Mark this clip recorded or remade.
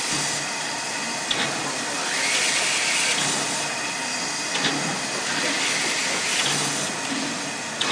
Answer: recorded